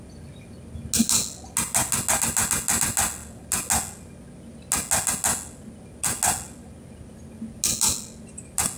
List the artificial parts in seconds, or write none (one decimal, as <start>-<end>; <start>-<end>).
none